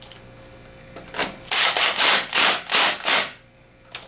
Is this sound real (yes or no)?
yes